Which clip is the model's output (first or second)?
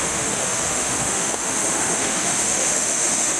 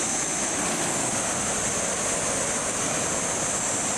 first